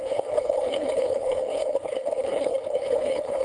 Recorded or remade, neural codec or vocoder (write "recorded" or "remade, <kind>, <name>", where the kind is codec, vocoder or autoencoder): remade, codec, HILCodec